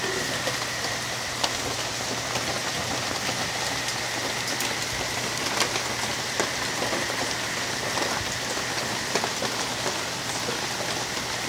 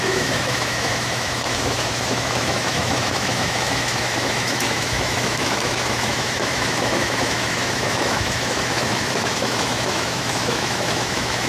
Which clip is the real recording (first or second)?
first